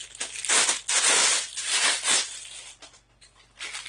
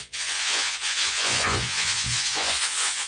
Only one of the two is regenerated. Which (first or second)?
second